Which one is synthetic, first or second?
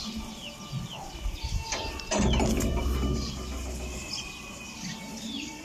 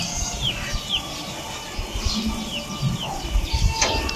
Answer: first